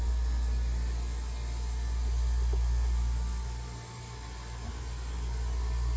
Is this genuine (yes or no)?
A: yes